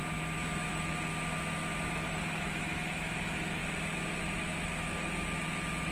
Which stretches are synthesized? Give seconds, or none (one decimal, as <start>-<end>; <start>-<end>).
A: 0.7-1.1; 1.9-3.6; 4.2-5.9